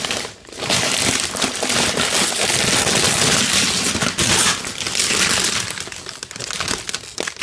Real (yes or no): yes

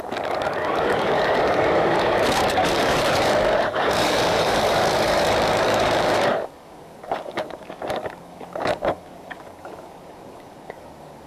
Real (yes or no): no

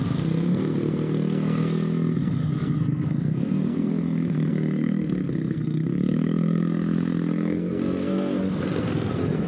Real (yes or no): no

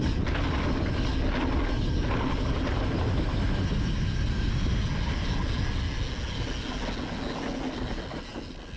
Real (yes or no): yes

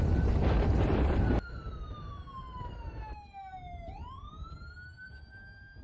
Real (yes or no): no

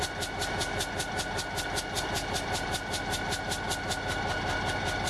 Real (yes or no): yes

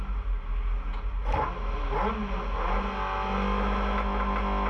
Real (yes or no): yes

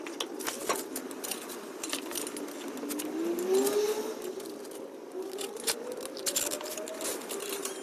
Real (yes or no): yes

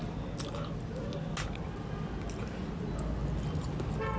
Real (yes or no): yes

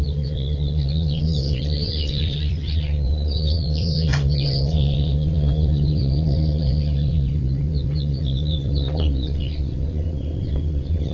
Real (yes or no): no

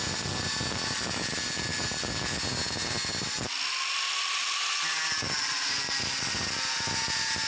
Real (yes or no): yes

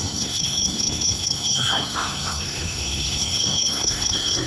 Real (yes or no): no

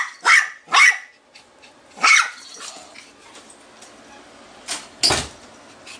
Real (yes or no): yes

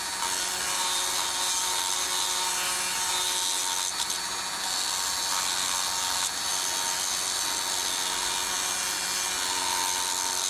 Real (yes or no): yes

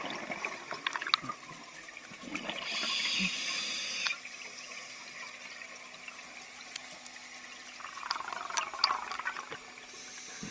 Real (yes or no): yes